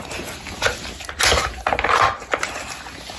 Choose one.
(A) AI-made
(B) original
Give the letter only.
B